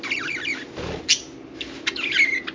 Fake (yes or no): no